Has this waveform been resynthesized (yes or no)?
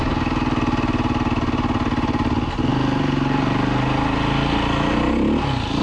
no